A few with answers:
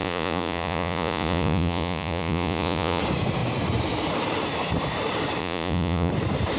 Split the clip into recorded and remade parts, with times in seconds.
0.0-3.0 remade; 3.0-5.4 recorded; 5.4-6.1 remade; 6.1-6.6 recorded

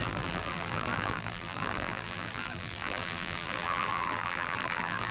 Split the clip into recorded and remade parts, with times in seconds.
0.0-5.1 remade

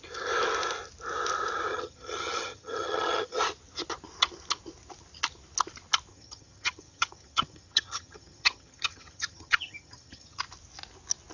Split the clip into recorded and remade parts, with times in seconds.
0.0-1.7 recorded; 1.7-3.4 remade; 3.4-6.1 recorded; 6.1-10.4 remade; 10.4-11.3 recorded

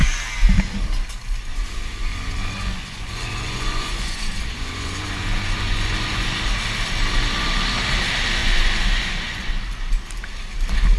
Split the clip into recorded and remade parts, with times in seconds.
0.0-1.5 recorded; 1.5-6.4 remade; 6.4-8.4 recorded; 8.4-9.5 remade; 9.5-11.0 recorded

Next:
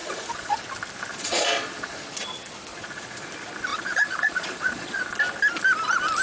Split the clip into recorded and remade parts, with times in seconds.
0.0-0.6 remade; 0.6-1.1 recorded; 1.1-2.2 remade; 2.2-2.7 recorded; 2.7-3.3 remade; 3.3-3.7 recorded; 3.7-5.0 remade; 5.0-6.2 recorded

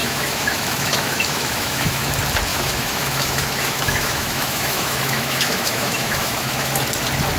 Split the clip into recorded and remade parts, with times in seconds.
0.0-2.1 remade; 2.1-2.5 recorded; 2.5-6.7 remade; 6.7-7.4 recorded